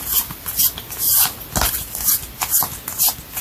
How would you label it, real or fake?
real